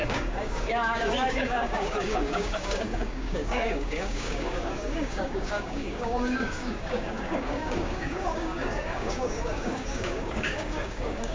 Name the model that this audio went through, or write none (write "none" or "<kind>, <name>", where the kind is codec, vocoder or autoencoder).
codec, DAC